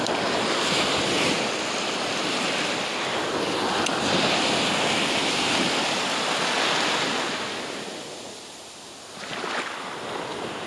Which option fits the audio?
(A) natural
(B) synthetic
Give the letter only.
A